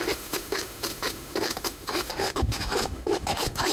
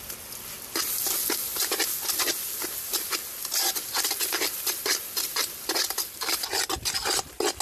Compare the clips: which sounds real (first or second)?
second